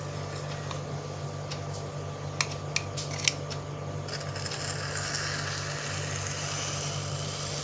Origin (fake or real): real